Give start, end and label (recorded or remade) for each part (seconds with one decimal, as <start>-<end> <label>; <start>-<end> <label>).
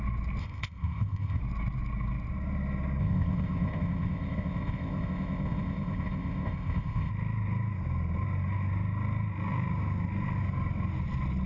0.0-0.4 recorded; 0.4-1.4 remade; 1.4-3.0 recorded; 3.0-7.1 remade; 7.1-11.5 recorded